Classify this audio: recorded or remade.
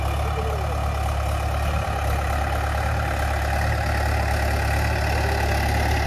recorded